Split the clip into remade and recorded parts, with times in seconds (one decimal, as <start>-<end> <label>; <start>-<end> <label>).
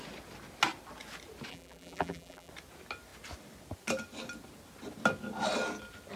0.0-1.5 recorded; 1.5-2.5 remade; 2.5-6.2 recorded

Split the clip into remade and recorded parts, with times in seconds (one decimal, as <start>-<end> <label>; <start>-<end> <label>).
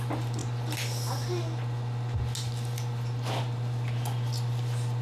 0.0-0.4 remade; 0.4-3.4 recorded; 3.4-5.0 remade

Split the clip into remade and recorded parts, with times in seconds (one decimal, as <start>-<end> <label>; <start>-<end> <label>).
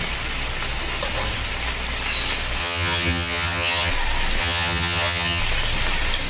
0.0-2.6 recorded; 2.6-3.9 remade; 3.9-4.4 recorded; 4.4-5.4 remade; 5.4-6.3 recorded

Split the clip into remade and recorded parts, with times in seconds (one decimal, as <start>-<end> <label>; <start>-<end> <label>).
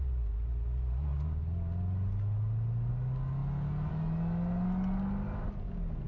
0.0-6.1 recorded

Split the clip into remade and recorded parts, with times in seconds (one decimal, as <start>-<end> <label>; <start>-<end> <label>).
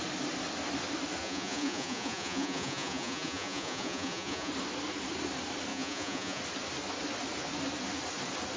0.0-1.2 recorded; 1.2-4.5 remade; 4.5-5.7 recorded; 5.7-6.4 remade; 6.4-8.6 recorded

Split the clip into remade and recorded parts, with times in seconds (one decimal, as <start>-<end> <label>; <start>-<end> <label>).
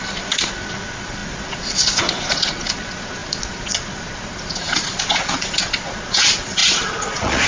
0.0-7.5 remade